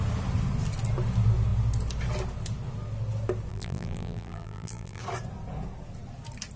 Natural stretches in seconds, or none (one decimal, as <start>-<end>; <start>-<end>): 0.0-3.5; 5.0-6.6